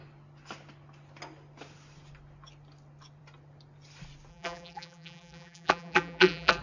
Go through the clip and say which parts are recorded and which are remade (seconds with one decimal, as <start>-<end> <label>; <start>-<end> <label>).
0.0-4.3 recorded; 4.3-6.6 remade